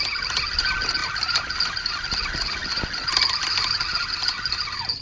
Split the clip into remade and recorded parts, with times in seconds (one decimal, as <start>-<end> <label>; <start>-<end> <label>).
0.0-5.0 recorded